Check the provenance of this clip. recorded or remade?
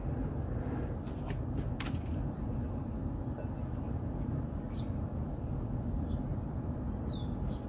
recorded